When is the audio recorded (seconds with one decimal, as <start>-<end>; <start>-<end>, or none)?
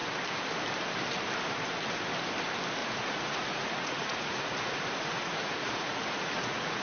0.0-2.8